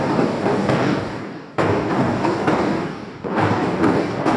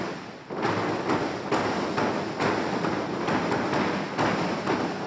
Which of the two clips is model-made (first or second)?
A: first